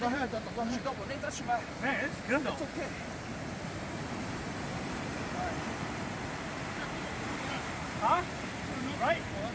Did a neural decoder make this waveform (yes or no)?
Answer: yes